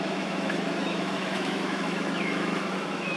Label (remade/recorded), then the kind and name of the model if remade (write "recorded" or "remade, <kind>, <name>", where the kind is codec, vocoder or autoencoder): remade, autoencoder, DAC-VAE